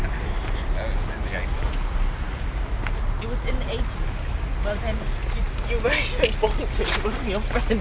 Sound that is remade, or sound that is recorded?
recorded